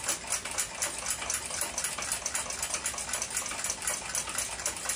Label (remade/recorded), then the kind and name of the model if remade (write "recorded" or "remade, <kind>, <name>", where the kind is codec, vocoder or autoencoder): recorded